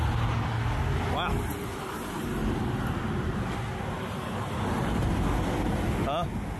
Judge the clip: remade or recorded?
recorded